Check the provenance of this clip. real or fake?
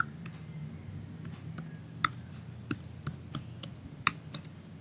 real